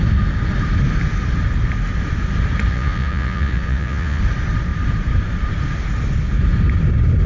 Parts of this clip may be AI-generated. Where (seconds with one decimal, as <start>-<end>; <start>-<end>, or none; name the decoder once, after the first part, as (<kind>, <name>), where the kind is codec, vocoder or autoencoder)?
2.7-4.2 (vocoder, Vocos)